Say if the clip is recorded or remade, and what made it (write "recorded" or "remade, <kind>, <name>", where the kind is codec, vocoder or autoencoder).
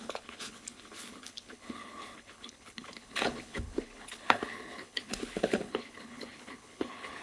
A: remade, codec, HILCodec